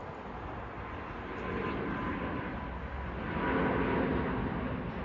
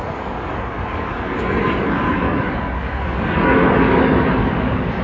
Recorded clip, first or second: first